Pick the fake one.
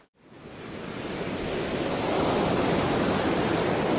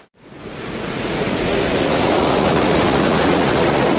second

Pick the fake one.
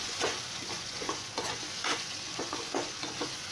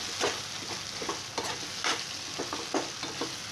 first